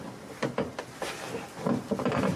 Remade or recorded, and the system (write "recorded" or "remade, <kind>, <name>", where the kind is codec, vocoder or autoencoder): recorded